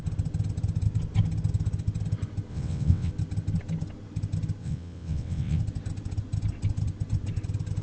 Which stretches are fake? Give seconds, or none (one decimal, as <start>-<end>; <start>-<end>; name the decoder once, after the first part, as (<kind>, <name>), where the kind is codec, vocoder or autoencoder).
2.5-3.1 (vocoder, WaveNeXt); 4.6-5.6